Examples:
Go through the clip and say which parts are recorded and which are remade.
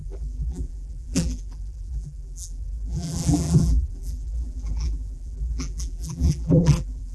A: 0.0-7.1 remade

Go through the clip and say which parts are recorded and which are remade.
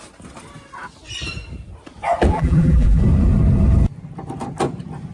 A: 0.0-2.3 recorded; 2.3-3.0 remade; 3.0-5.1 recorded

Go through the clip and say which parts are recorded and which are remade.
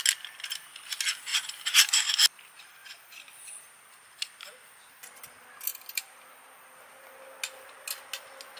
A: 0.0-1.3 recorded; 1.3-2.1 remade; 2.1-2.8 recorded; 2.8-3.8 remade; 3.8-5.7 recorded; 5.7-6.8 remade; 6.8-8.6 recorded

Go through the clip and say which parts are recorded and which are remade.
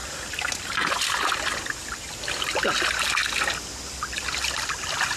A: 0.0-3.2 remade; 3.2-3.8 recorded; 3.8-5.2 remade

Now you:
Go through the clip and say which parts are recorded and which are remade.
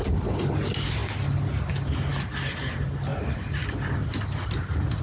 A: 0.0-3.1 recorded; 3.1-5.0 remade